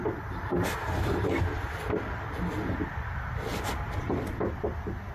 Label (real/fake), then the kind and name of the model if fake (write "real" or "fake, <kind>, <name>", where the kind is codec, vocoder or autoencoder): real